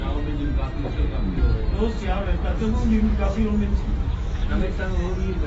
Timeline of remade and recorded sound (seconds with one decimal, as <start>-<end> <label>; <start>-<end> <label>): 0.0-2.5 recorded; 2.5-5.0 remade; 5.0-5.5 recorded